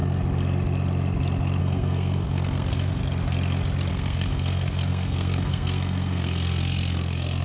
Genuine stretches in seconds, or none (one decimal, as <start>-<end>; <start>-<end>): 0.0-1.6; 3.0-3.9